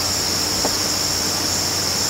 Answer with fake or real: real